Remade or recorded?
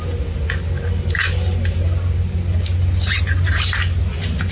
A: recorded